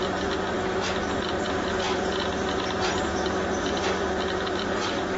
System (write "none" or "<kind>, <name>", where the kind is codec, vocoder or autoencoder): none